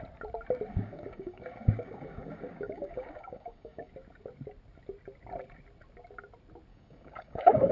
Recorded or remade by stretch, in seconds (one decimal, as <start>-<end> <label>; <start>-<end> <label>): 0.0-0.7 recorded; 0.7-3.9 remade; 3.9-6.7 recorded; 6.7-7.7 remade